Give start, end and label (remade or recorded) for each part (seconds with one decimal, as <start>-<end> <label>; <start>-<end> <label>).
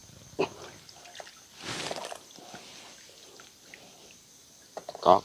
0.0-2.0 remade; 2.0-5.2 recorded